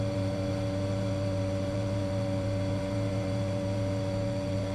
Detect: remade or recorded remade